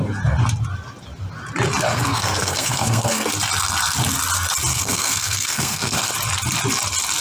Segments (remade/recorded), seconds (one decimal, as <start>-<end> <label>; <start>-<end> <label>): 0.0-1.9 recorded; 1.9-3.3 remade; 3.3-4.7 recorded; 4.7-6.1 remade; 6.1-7.2 recorded